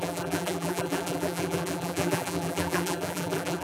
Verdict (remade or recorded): remade